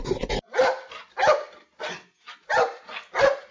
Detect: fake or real real